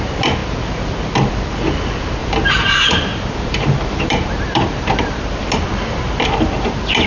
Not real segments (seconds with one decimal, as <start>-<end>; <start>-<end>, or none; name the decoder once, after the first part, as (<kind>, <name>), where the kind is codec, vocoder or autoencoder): 2.2-5.2 (vocoder, BigVGAN v2)